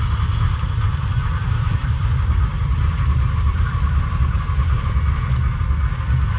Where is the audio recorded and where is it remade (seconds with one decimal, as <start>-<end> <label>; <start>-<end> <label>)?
0.0-1.2 recorded; 1.2-5.0 remade; 5.0-6.4 recorded